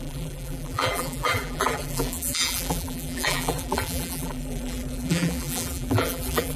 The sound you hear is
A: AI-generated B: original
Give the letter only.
A